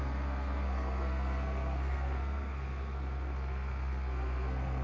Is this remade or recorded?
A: remade